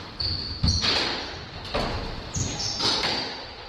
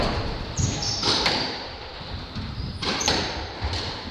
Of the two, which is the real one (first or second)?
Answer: first